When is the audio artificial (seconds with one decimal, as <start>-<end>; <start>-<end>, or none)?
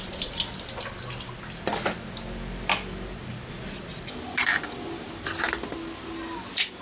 none